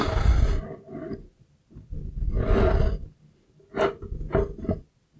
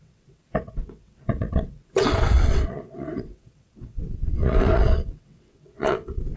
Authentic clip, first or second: first